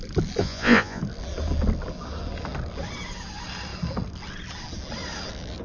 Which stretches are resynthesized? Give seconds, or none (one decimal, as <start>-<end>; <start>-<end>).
0.4-1.0